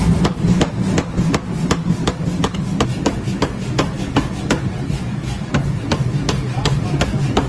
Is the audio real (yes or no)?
yes